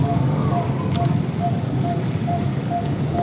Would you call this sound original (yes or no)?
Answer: no